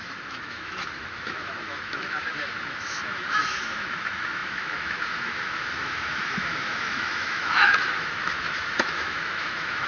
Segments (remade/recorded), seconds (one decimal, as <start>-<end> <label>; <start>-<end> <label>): 0.0-9.9 remade